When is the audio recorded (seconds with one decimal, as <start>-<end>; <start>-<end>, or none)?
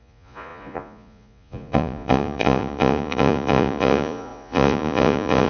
none